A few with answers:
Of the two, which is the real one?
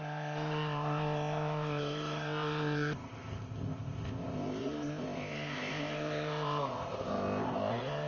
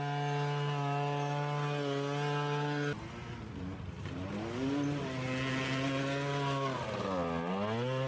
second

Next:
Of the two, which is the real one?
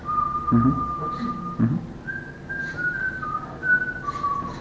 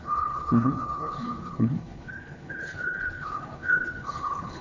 first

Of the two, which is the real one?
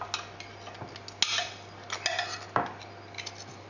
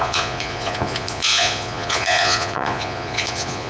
first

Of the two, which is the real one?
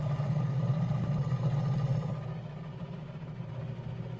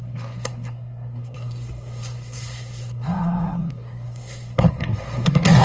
first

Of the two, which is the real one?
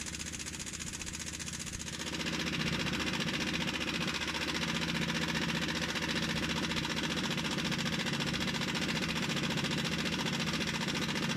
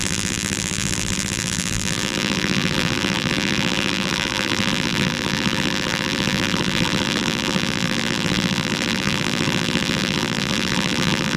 first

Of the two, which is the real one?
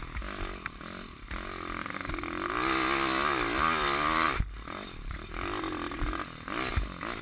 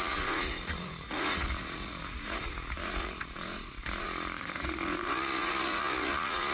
first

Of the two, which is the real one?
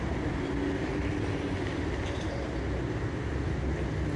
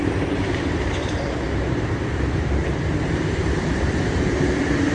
first